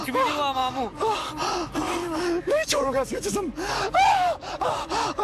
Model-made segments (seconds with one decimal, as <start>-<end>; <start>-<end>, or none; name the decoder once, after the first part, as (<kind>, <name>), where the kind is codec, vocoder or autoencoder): 0.6-1.3 (codec, DAC); 2.0-5.2